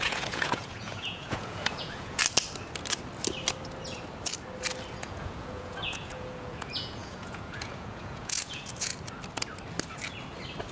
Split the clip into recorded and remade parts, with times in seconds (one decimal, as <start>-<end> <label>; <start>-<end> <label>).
0.0-2.2 remade; 2.2-5.0 recorded; 5.0-8.9 remade; 8.9-10.7 recorded